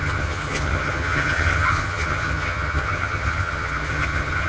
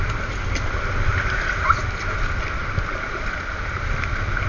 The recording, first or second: second